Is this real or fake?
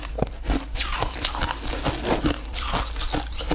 real